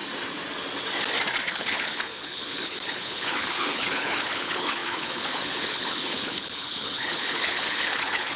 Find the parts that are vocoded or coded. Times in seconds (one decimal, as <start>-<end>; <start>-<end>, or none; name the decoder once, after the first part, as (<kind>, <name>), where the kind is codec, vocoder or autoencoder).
1.5-8.4 (codec, HILCodec)